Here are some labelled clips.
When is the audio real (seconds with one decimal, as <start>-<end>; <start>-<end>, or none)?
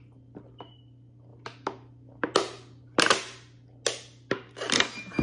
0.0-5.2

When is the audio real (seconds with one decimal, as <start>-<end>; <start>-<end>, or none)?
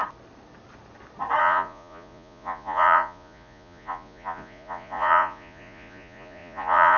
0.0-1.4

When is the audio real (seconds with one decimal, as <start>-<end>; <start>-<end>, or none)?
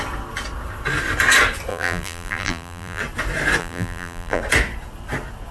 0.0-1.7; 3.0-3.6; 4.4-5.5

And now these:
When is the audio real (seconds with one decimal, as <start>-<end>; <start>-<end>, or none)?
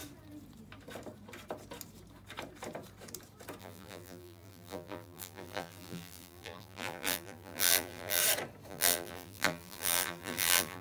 0.0-3.6; 8.2-8.7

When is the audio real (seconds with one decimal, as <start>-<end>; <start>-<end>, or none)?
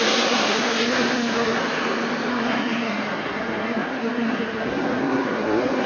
1.6-2.3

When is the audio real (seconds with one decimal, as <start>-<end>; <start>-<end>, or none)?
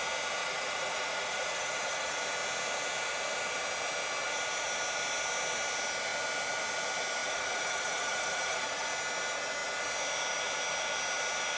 0.0-0.4; 2.2-7.2; 8.9-11.6